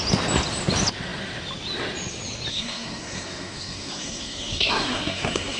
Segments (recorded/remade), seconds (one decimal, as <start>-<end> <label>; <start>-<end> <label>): 0.0-2.5 recorded; 2.5-5.6 remade